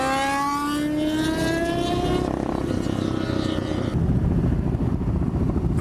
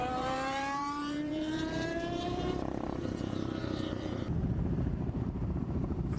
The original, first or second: first